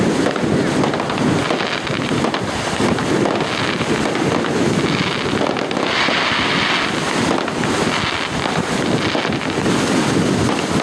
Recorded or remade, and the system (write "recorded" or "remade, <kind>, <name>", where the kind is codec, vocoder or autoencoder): recorded